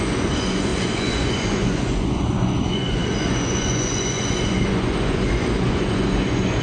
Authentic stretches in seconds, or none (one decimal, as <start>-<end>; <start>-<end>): none